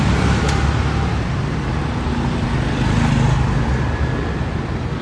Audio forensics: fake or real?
real